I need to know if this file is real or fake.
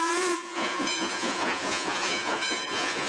fake